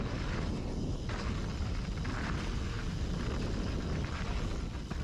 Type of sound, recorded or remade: recorded